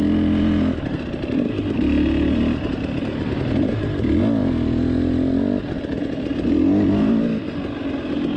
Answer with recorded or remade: recorded